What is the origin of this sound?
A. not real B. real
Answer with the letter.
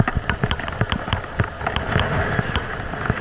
B